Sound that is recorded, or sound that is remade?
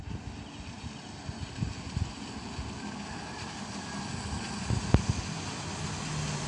recorded